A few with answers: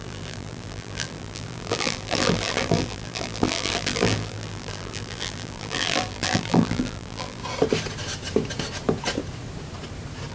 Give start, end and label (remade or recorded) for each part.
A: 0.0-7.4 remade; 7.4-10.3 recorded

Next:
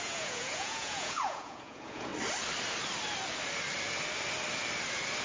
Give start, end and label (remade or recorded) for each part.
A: 0.0-2.1 remade; 2.1-5.2 recorded

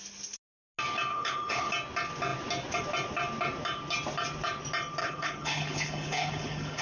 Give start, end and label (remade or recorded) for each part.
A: 0.0-1.1 recorded; 1.1-1.7 remade; 1.7-5.0 recorded; 5.0-6.8 remade

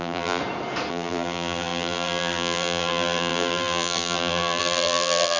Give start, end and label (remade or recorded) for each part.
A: 0.0-0.4 remade; 0.4-0.9 recorded; 0.9-5.4 remade

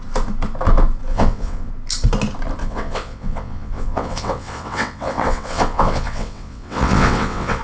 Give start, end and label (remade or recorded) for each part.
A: 0.0-1.1 recorded; 1.1-1.7 remade; 1.7-2.6 recorded; 2.6-7.6 remade

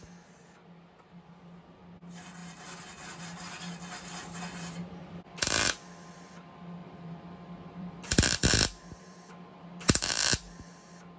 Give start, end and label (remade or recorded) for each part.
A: 0.0-6.8 recorded; 6.8-9.7 remade; 9.7-11.2 recorded